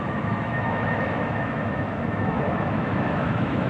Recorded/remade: remade